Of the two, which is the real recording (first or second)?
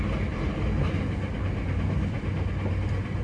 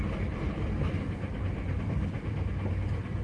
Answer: first